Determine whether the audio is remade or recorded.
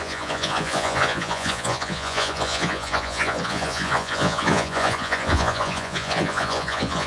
remade